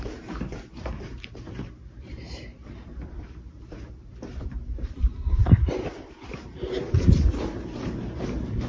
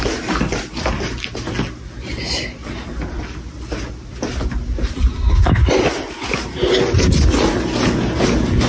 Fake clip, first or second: first